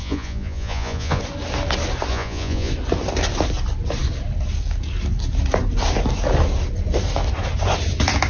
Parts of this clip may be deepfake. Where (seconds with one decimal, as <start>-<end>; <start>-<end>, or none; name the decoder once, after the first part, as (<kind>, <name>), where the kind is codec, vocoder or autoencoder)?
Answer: 0.0-1.2 (vocoder, Vocos); 2.1-2.7